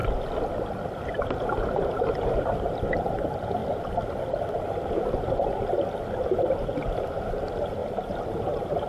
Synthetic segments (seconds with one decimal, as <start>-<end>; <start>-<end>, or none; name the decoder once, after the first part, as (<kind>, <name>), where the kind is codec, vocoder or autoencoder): 1.9-3.6 (vocoder, BigVGAN v2); 6.5-8.9